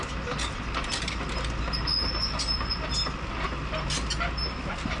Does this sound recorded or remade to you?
recorded